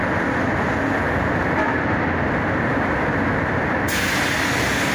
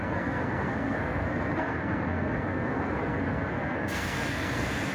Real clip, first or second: first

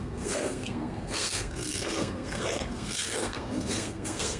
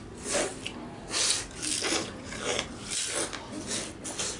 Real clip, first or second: second